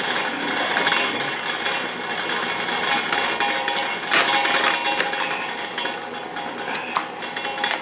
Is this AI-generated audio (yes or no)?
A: no